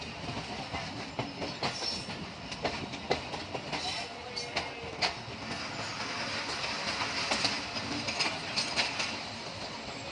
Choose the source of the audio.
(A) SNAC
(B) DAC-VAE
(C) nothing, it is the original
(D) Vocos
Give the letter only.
C